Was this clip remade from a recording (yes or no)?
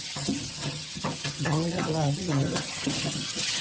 yes